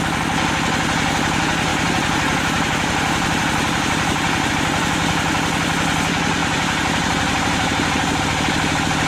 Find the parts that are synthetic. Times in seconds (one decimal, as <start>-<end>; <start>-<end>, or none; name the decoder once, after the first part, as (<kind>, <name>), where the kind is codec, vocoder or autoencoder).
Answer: 1.7-4.5 (vocoder, BigVGAN v2); 6.4-8.2